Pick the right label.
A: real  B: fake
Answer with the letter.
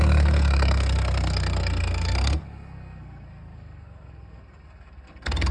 B